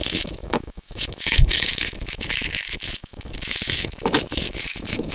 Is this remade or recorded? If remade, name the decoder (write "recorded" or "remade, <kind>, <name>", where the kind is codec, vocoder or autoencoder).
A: remade, autoencoder, DAC-VAE